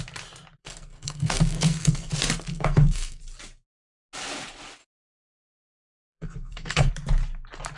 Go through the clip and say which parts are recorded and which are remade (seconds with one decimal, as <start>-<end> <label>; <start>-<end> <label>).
0.0-0.6 recorded; 0.6-2.1 remade; 2.1-2.5 recorded; 2.5-3.2 remade; 3.2-4.8 recorded; 4.8-6.9 remade; 6.9-7.8 recorded